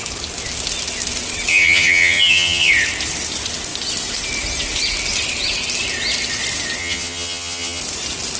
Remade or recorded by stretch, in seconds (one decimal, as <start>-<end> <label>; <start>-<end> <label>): 0.0-1.5 recorded; 1.5-2.7 remade; 2.7-6.8 recorded; 6.8-7.8 remade; 7.8-8.4 recorded